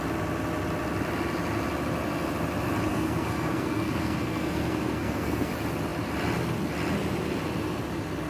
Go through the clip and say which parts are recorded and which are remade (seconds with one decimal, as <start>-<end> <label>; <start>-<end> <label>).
0.0-2.9 recorded; 2.9-5.5 remade; 5.5-8.3 recorded